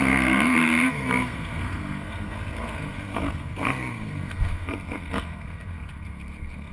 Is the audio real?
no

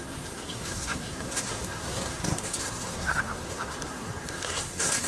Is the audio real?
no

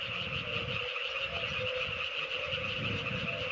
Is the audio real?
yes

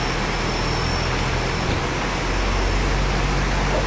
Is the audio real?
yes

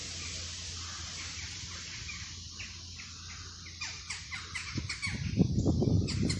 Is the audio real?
yes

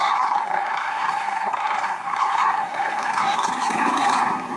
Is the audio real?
no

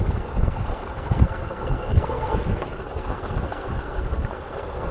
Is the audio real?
no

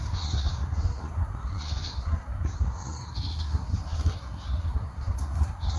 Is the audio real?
no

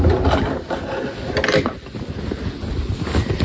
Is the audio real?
yes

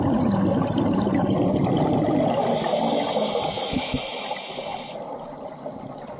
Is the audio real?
yes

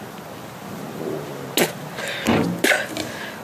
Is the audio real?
yes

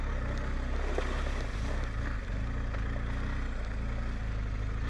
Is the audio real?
yes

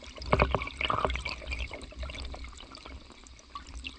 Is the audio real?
yes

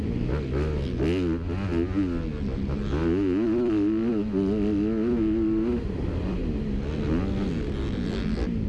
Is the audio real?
yes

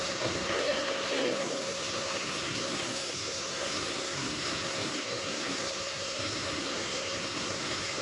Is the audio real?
no